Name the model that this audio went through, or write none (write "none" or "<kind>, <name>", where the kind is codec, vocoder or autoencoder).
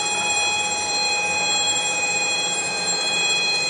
vocoder, BigVGAN v2